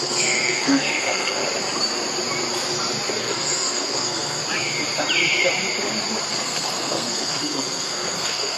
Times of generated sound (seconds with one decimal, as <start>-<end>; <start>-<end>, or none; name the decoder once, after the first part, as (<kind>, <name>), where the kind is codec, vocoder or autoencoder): 0.0-1.4 (codec, SNAC); 3.2-4.4; 6.3-8.6